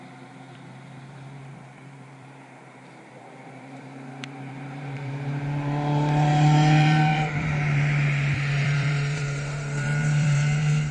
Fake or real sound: fake